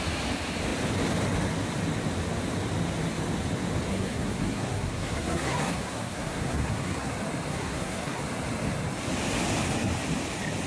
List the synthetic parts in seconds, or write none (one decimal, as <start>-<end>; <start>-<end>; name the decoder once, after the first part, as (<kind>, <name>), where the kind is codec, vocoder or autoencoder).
3.9-7.1 (codec, SNAC); 7.5-8.2